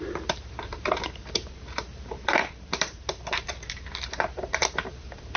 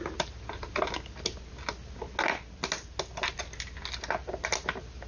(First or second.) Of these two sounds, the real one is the second